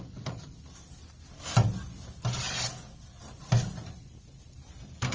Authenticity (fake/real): real